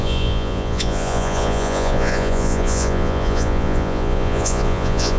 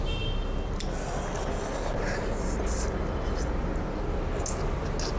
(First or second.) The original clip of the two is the second